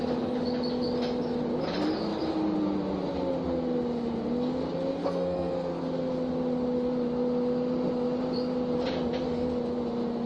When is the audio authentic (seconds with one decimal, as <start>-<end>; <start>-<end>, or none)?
0.0-5.0; 5.8-10.3